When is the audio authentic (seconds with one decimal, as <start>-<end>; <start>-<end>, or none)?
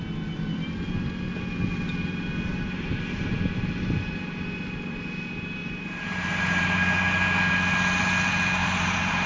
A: 0.0-2.5; 3.4-5.6; 6.6-8.6